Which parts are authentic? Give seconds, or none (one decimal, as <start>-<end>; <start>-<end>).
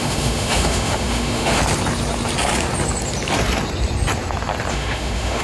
1.6-4.7